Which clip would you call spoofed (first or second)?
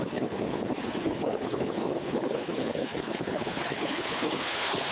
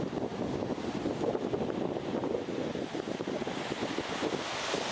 first